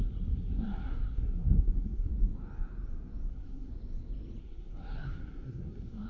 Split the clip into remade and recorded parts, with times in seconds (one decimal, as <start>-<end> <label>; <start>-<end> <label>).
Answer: 0.0-2.1 remade; 2.1-3.3 recorded; 3.3-3.7 remade; 3.7-4.4 recorded; 4.4-6.1 remade